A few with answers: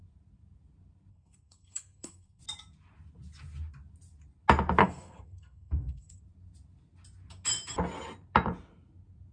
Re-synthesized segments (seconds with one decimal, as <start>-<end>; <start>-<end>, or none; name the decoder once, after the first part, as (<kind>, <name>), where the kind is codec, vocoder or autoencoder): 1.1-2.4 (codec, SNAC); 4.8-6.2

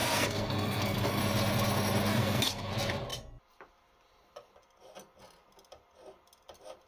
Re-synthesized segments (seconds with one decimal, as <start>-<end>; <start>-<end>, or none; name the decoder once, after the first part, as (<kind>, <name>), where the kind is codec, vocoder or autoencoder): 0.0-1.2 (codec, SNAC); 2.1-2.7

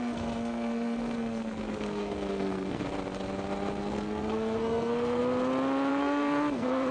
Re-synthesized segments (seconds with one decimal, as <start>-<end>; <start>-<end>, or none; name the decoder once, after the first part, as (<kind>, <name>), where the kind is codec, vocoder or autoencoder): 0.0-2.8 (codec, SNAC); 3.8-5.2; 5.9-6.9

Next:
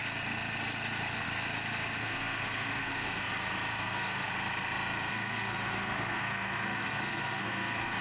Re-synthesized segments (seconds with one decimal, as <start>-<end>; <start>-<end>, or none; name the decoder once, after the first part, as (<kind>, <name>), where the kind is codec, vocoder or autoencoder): 2.0-3.3 (codec, SNAC); 3.7-4.3; 5.1-8.0